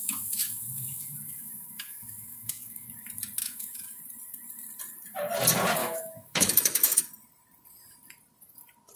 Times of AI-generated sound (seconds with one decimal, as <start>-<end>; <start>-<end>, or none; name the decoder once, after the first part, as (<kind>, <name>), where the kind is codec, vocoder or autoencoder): 0.0-2.9 (autoencoder, DAC-VAE); 3.4-4.0; 5.8-7.0